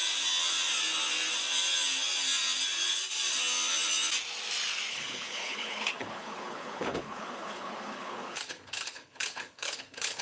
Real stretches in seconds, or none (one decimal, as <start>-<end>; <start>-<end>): 0.0-4.9